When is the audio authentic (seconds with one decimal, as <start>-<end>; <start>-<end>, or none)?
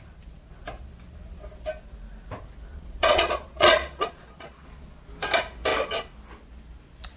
0.0-2.7; 5.0-7.2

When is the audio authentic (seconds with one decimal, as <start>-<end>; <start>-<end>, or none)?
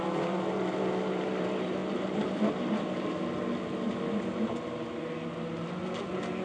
0.0-6.4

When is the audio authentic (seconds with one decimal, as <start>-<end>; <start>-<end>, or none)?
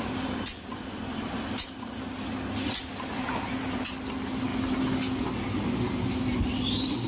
0.0-7.1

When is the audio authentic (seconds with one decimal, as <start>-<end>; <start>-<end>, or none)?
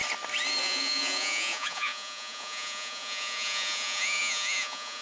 0.0-0.6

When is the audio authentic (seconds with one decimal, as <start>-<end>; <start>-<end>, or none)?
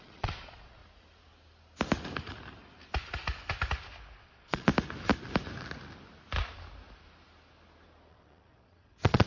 0.8-4.2; 4.7-8.1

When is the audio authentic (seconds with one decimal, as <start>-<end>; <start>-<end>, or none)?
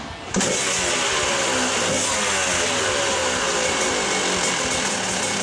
0.0-5.4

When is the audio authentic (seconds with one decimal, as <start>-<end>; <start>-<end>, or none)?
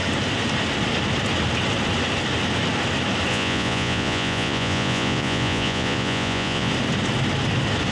0.0-3.3; 6.7-7.9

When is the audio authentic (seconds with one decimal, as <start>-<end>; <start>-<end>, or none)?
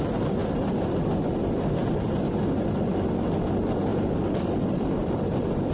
0.0-5.7